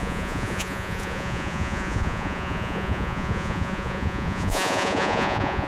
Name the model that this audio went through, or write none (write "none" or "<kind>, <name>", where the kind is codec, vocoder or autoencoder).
vocoder, Vocos